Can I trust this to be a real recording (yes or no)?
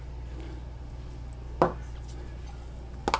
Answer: yes